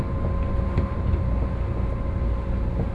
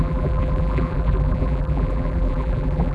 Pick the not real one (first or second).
second